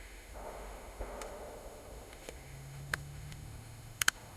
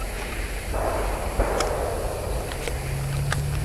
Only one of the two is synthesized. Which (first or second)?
first